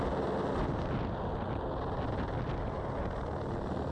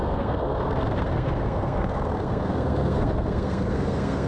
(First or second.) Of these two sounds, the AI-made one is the second